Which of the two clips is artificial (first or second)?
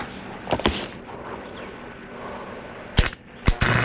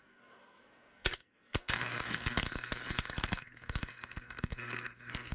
second